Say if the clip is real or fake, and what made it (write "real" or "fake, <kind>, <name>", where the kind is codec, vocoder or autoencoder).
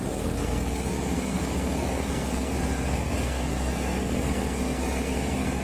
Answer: fake, codec, SNAC